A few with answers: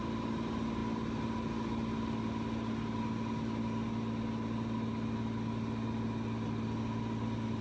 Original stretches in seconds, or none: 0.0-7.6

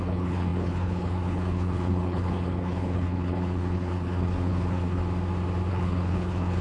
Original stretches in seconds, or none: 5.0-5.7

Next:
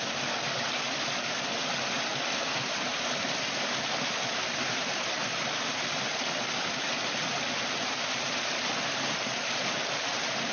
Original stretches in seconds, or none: 0.0-10.5